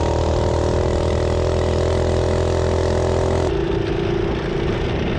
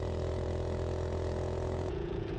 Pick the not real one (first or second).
second